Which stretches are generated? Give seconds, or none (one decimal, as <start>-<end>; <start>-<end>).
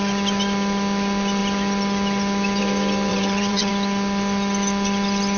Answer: 3.1-3.7